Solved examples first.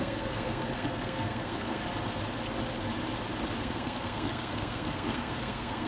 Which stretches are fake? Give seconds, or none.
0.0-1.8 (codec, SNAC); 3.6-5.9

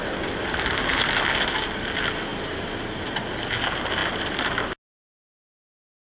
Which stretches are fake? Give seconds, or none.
none

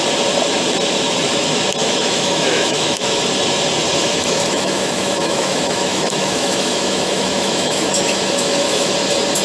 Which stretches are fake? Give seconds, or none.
1.8-3.2 (autoencoder, DAC-VAE); 4.0-8.9

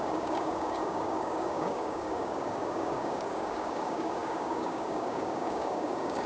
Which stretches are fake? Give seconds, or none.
0.0-6.3 (codec, DAC)

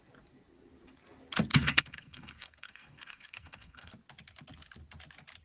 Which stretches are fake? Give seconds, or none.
1.5-3.9 (codec, SNAC)

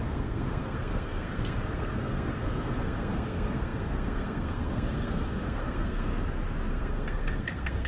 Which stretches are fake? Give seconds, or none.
0.0-6.1 (codec, SNAC); 6.7-7.9

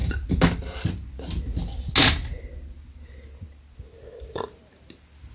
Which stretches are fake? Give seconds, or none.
none

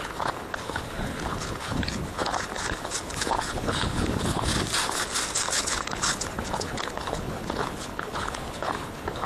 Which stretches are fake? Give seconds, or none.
0.0-4.5 (codec, HILCodec); 5.5-9.3